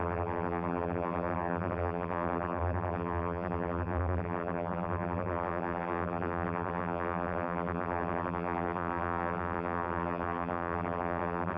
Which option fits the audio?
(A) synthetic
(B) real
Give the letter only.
A